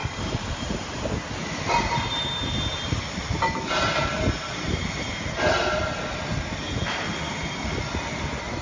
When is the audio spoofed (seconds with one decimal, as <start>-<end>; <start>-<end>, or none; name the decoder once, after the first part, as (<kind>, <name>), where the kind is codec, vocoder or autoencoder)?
none